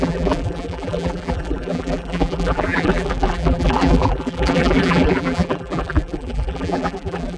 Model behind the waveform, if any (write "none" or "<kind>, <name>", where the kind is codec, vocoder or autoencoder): vocoder, BigVGAN v2